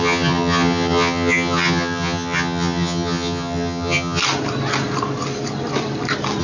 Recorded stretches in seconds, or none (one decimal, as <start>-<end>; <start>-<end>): 4.2-6.4